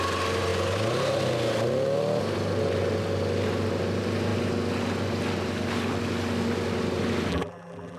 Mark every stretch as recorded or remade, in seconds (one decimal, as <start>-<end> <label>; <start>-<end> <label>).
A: 0.0-7.3 recorded; 7.3-8.0 remade